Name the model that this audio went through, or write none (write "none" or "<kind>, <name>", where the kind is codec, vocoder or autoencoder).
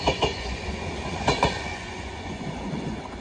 vocoder, Vocos